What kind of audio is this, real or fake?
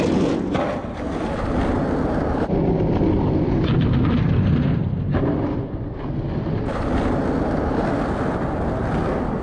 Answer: real